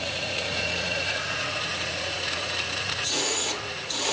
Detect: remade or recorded remade